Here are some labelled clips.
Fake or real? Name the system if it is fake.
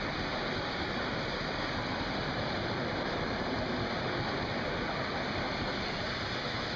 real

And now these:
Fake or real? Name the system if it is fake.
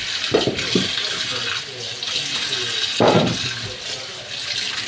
real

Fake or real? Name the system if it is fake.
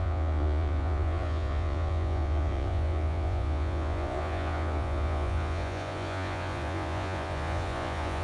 fake, vocoder, Vocos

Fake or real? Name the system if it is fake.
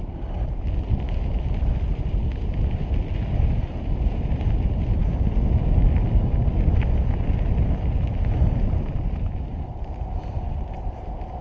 real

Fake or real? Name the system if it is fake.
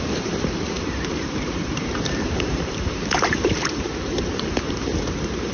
fake, vocoder, BigVGAN v2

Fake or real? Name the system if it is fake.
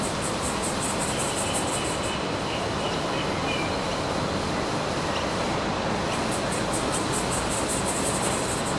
real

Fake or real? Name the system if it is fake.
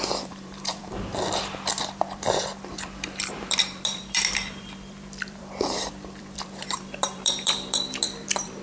fake, vocoder, BigVGAN v2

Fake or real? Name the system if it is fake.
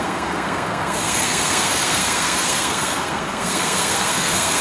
fake, codec, SNAC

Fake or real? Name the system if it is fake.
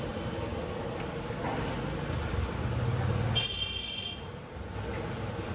real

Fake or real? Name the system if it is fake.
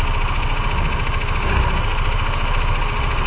real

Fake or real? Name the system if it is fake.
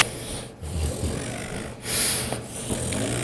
real